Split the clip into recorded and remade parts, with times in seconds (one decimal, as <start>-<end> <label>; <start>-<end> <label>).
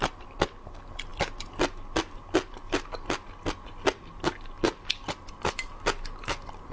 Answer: 0.0-6.7 recorded